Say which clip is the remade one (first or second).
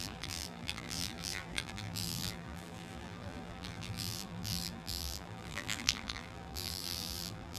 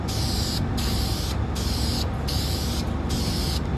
first